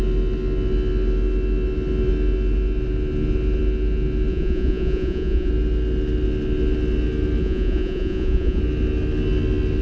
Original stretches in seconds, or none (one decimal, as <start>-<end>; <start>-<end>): 0.0-4.3; 5.5-7.4; 8.6-9.8